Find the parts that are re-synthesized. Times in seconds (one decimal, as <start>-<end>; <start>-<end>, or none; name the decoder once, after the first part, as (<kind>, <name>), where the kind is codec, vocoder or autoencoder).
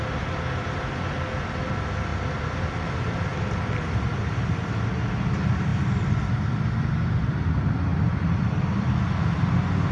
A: 2.1-2.7 (vocoder, BigVGAN v2); 5.7-6.5; 7.9-8.9